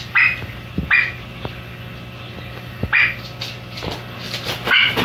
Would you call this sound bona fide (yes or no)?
yes